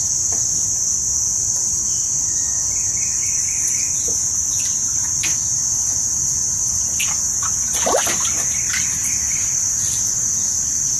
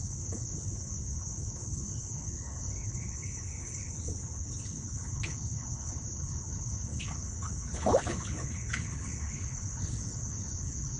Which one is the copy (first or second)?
second